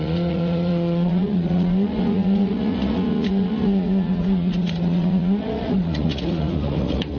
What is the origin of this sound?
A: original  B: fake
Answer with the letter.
B